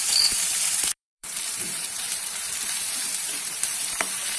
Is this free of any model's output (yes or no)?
no